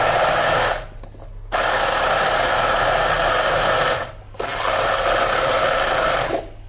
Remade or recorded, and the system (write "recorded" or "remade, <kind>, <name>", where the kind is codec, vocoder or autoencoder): recorded